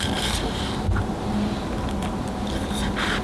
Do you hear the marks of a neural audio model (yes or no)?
no